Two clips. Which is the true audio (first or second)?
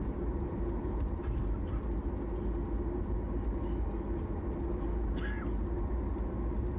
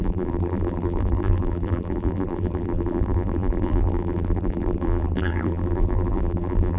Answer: first